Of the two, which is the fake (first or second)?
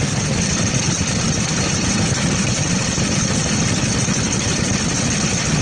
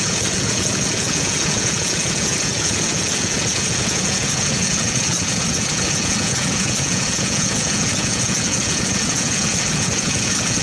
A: second